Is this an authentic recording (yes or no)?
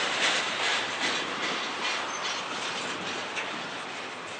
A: yes